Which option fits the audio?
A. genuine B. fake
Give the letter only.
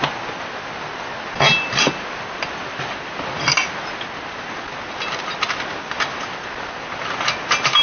A